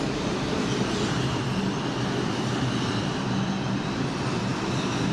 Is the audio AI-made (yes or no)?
no